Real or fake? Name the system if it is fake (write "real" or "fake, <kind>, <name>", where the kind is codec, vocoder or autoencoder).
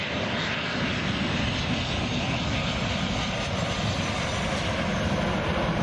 real